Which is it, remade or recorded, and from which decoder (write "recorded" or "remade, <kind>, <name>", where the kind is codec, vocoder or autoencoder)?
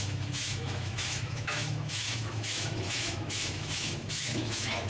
remade, autoencoder, DAC-VAE